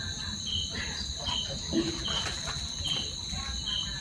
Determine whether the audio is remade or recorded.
recorded